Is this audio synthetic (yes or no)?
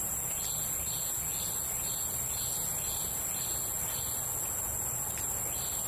no